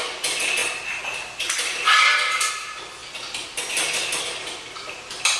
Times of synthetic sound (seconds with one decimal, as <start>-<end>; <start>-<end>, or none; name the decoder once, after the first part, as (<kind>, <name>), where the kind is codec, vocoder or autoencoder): 0.0-0.6 (vocoder, BigVGAN v2); 1.4-5.4